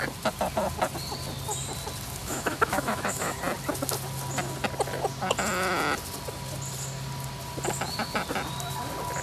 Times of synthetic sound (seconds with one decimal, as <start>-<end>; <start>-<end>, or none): 2.2-3.4